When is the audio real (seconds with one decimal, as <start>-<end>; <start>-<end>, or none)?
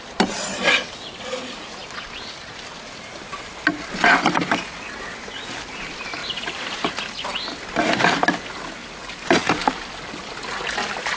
0.0-6.2; 6.9-8.8; 9.9-11.2